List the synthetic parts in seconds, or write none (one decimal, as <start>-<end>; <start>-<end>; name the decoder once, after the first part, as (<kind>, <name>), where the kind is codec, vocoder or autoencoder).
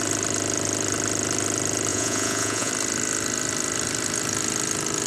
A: 1.9-2.7 (vocoder, Vocos)